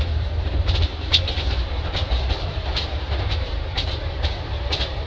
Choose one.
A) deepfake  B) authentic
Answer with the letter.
A